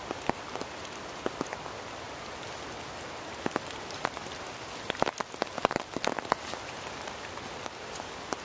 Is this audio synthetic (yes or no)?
no